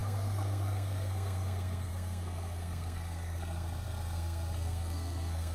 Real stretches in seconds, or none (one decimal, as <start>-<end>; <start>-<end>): none